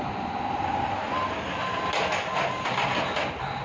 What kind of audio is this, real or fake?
real